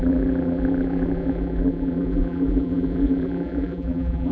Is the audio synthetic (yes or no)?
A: yes